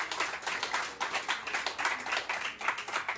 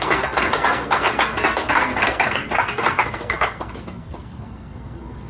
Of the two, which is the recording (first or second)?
first